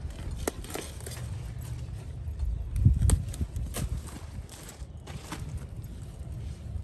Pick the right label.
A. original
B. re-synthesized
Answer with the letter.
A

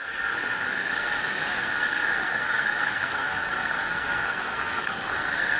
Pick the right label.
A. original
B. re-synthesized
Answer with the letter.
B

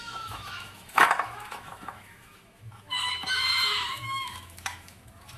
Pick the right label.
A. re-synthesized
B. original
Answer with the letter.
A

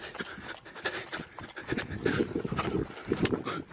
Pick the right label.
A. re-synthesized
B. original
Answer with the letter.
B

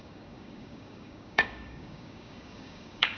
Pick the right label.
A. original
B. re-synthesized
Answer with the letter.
B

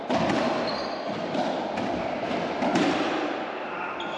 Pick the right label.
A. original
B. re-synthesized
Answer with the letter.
B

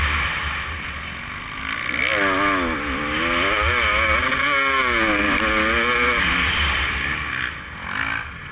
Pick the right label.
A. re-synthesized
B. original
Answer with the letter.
B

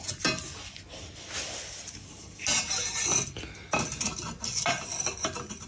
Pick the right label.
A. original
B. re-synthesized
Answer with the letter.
A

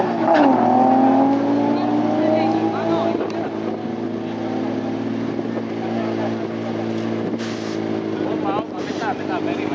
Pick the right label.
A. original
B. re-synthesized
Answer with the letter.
A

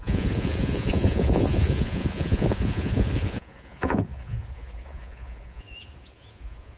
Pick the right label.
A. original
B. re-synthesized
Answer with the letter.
B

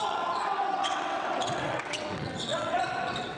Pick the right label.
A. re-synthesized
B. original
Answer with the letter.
A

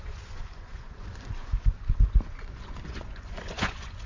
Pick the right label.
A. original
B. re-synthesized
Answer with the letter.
B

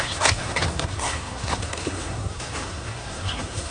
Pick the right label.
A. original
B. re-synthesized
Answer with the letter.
B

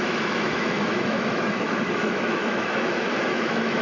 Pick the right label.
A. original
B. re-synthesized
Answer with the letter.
B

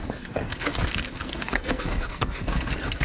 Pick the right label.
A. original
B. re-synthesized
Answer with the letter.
B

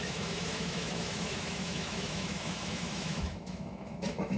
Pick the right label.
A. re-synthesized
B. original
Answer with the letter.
A